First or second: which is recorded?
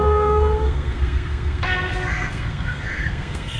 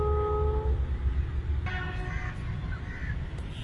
second